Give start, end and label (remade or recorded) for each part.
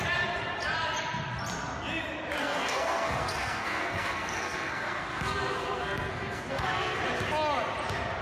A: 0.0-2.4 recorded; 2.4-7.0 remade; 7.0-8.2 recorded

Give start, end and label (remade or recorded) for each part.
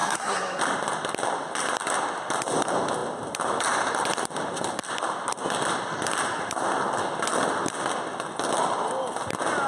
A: 0.0-0.6 remade; 0.6-9.7 recorded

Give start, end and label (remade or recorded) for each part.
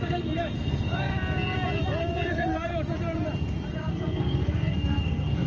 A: 0.0-1.1 remade; 1.1-2.3 recorded; 2.3-2.7 remade; 2.7-3.7 recorded; 3.7-5.5 remade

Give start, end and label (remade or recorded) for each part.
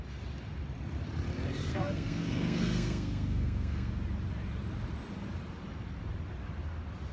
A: 0.0-1.7 recorded; 1.7-3.9 remade; 3.9-7.1 recorded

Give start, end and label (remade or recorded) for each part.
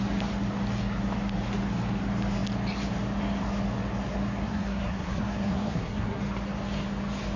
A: 0.0-4.4 recorded; 4.4-6.2 remade; 6.2-7.4 recorded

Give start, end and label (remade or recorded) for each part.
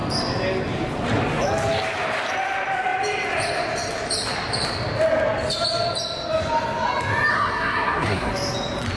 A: 0.0-7.3 recorded; 7.3-8.3 remade; 8.3-9.0 recorded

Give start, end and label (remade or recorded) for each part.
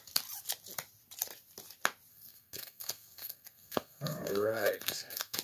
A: 0.0-2.1 recorded; 2.1-5.4 remade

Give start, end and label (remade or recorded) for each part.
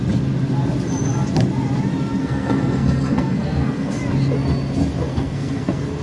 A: 0.0-2.2 recorded; 2.2-4.0 remade; 4.0-5.1 recorded; 5.1-6.0 remade